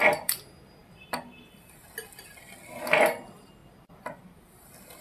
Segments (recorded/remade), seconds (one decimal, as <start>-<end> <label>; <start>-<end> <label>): 0.0-5.0 recorded